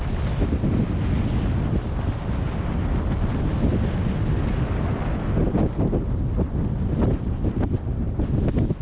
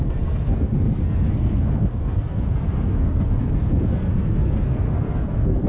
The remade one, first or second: second